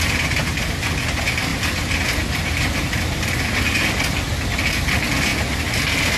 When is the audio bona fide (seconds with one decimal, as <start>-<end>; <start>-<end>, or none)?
0.0-1.5; 3.0-6.2